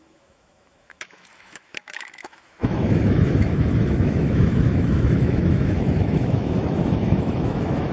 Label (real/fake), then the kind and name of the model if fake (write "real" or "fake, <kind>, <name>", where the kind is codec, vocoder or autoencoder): fake, autoencoder, DAC-VAE